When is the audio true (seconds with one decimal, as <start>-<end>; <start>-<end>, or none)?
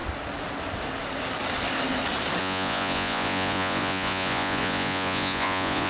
0.0-2.4